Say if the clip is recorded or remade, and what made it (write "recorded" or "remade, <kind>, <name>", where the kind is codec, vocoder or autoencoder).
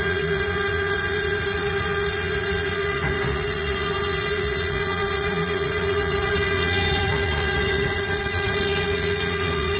remade, vocoder, Vocos